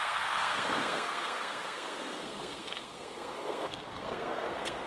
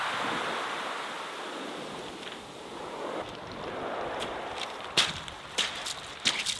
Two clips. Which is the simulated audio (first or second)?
first